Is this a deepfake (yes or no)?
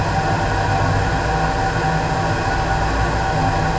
no